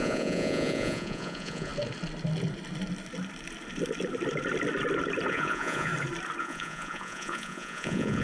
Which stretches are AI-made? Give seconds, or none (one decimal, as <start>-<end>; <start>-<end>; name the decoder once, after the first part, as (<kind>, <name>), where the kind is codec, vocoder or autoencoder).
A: 0.0-1.7 (vocoder, Vocos); 5.3-5.9; 6.4-8.2